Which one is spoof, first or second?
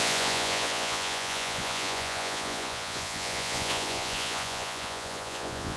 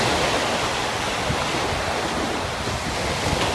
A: first